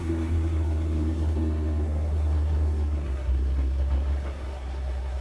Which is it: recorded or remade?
remade